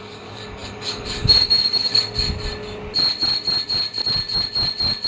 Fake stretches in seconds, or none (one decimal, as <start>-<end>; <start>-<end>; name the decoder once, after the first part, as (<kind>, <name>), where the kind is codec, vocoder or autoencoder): 0.0-1.9 (codec, DAC)